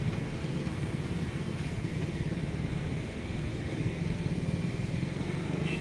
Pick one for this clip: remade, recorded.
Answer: remade